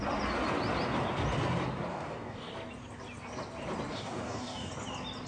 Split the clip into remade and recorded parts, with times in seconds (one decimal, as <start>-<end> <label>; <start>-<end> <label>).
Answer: 0.0-1.9 recorded; 1.9-2.5 remade; 2.5-3.9 recorded; 3.9-4.7 remade; 4.7-5.3 recorded